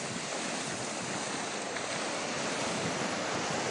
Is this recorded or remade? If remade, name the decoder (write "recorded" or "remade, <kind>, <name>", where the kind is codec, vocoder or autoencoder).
recorded